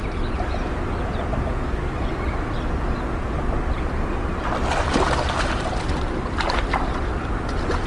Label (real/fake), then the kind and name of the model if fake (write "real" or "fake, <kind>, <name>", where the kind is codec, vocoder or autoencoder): real